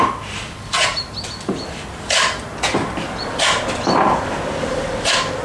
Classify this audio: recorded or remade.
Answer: recorded